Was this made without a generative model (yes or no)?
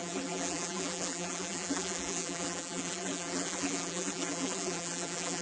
no